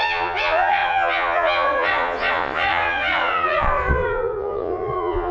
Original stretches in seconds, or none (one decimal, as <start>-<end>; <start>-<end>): none